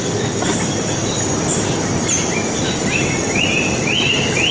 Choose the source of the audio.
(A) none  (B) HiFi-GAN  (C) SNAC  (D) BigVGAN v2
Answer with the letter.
A